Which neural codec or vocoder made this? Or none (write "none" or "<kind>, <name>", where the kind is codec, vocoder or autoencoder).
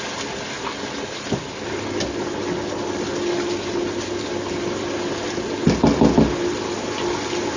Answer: none